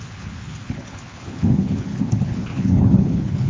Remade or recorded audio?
remade